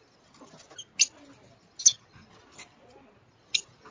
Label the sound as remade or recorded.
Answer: recorded